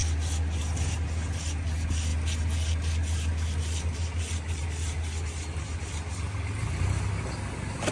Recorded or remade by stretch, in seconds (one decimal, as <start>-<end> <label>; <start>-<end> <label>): 0.0-7.9 recorded